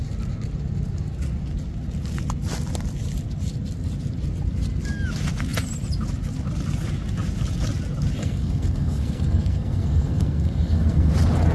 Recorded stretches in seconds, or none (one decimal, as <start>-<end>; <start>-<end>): 0.0-8.2; 11.1-11.5